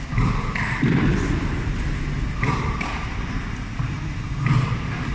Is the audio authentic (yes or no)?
no